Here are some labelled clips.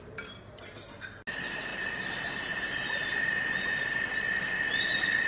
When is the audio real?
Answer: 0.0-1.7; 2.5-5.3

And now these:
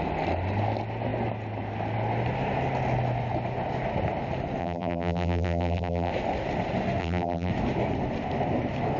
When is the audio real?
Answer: 0.0-4.6; 6.1-7.0; 7.5-9.0

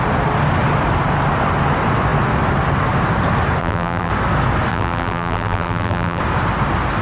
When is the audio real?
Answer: 0.0-3.6; 4.1-4.7; 6.2-7.0

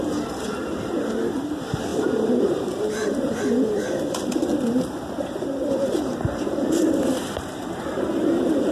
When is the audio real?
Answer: 4.5-5.2

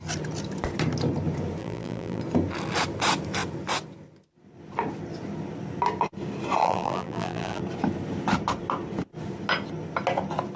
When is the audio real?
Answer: 0.0-1.6; 2.2-6.6; 7.6-10.6

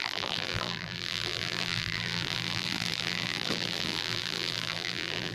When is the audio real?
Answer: none

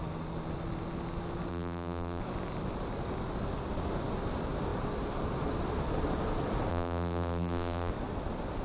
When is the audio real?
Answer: 0.0-1.5; 2.2-6.7; 7.9-8.6

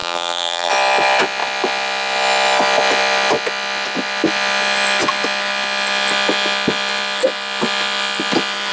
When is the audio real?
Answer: 0.7-8.7